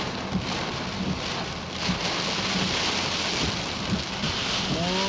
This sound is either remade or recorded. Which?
recorded